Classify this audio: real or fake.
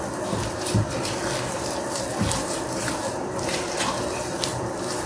fake